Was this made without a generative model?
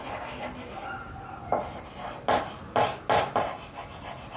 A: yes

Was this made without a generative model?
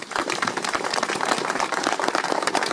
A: no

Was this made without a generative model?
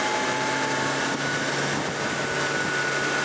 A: yes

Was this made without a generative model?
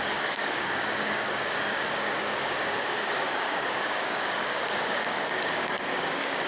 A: no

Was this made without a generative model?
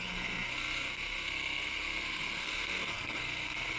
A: no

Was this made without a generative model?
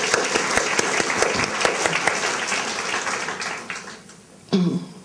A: yes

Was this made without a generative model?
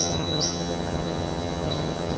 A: no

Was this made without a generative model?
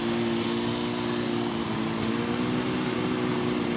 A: yes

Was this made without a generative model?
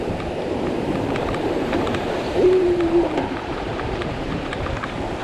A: no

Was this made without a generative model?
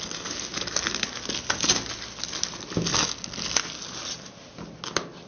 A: yes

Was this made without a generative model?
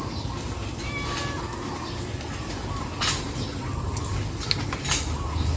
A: yes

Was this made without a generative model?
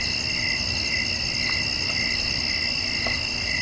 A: yes